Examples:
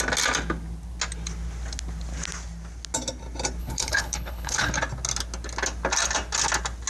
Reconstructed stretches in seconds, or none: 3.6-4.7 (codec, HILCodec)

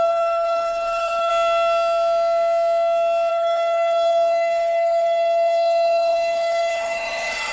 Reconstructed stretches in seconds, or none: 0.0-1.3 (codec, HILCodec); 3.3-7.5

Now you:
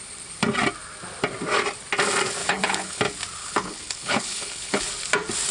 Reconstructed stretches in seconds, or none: 2.4-3.0 (codec, HILCodec); 3.4-4.8

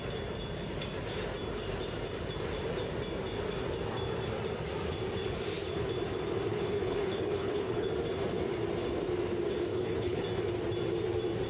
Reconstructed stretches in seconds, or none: 6.5-7.9 (codec, HILCodec); 9.7-10.2